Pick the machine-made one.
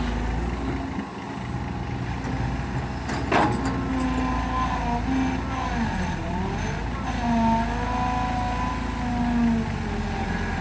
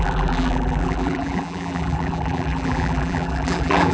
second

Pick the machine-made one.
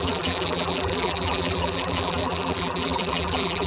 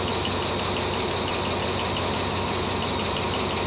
first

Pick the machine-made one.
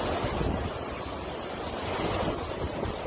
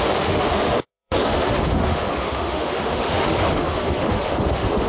second